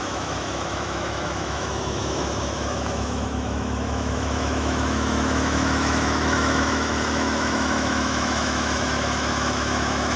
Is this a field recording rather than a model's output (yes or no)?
no